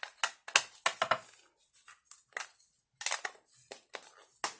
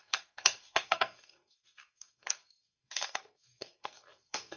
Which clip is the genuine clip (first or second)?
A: first